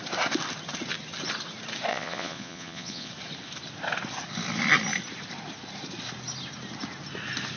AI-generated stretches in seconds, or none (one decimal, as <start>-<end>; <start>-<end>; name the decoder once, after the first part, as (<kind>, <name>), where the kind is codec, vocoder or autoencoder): 1.9-3.1 (vocoder, Vocos)